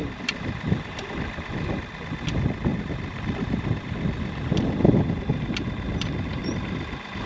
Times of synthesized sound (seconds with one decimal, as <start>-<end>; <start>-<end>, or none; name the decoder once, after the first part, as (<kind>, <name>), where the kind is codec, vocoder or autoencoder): 0.0-2.2 (vocoder, BigVGAN v2); 2.7-4.5; 6.4-7.3